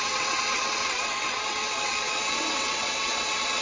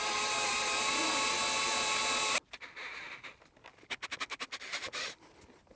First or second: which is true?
second